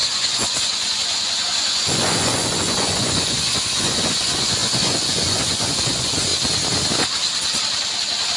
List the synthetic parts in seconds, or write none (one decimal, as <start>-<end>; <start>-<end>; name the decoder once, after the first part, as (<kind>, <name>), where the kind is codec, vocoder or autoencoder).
0.0-6.3 (vocoder, Vocos)